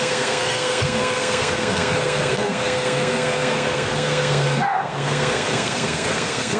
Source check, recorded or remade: remade